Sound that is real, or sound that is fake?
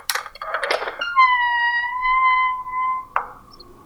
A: real